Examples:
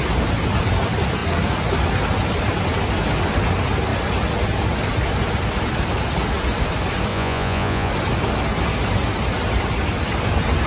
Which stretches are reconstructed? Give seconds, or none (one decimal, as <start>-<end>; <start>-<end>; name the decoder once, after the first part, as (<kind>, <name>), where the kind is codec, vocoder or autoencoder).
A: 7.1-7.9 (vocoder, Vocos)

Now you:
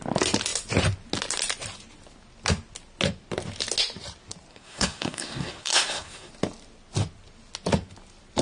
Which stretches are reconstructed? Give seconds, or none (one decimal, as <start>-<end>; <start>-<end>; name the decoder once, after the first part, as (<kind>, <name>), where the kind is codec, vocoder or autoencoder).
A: 4.5-6.3 (codec, SNAC)

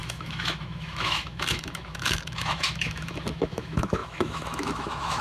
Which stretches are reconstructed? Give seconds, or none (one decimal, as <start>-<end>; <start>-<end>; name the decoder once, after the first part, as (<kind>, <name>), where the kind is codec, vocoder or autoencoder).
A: 0.0-5.2 (autoencoder, DAC-VAE)

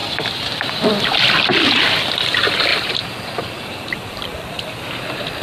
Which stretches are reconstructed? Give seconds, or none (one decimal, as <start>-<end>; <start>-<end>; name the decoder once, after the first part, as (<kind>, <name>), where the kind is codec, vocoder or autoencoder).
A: 2.7-4.5 (vocoder, BigVGAN v2)